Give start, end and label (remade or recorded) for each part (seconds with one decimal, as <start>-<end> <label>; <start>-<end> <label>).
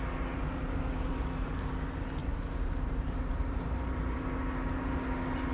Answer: 0.0-2.2 recorded; 2.2-4.2 remade; 4.2-5.5 recorded